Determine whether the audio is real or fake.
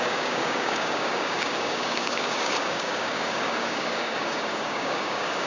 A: fake